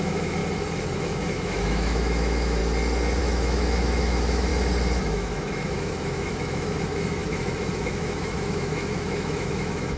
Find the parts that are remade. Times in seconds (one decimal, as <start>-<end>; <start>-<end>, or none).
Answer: 0.0-0.4; 1.0-2.6; 3.2-4.5; 5.0-10.0